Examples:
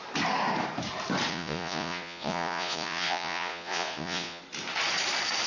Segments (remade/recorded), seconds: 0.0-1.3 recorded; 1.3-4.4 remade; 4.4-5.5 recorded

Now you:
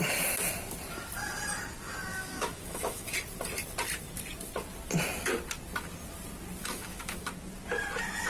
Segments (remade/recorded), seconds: 0.0-2.1 recorded; 2.1-3.1 remade; 3.1-6.6 recorded; 6.6-7.3 remade; 7.3-8.3 recorded

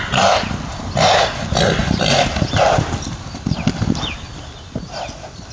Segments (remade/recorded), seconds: 0.0-5.5 recorded

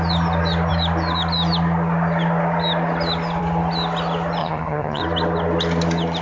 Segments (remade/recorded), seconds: 0.0-4.4 recorded; 4.4-5.0 remade; 5.0-6.2 recorded